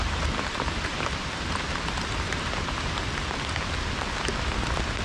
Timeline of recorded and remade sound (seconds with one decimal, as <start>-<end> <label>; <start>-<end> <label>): 0.0-3.0 remade; 3.0-5.0 recorded